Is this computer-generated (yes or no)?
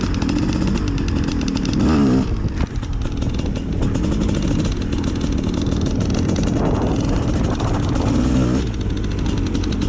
no